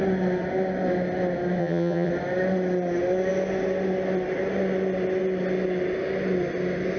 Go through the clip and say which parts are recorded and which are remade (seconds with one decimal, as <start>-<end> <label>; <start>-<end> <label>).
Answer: 0.0-1.6 recorded; 1.6-2.1 remade; 2.1-7.0 recorded